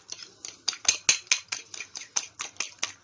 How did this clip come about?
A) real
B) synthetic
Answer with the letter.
A